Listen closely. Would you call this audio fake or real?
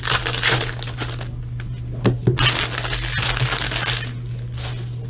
real